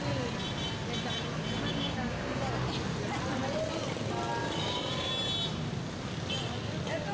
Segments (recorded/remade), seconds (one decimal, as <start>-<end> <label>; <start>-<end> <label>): 0.0-1.7 recorded; 1.7-2.5 remade; 2.5-4.4 recorded; 4.4-5.1 remade; 5.1-7.1 recorded